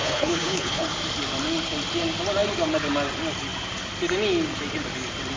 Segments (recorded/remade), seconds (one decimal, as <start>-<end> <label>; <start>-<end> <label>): 0.0-0.9 remade; 0.9-5.4 recorded